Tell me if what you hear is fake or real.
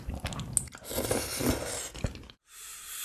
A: real